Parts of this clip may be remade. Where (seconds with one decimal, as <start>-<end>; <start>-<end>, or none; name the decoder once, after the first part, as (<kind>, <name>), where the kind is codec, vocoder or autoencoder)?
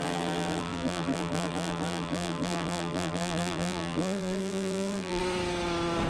0.0-5.2 (vocoder, BigVGAN v2)